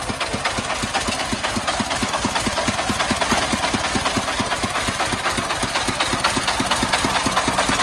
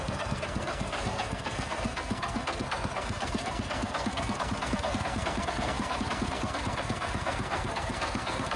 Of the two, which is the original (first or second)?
first